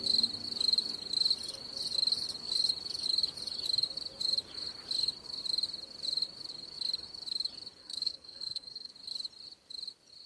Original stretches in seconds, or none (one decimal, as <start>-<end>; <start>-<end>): 0.0-7.8; 8.9-10.3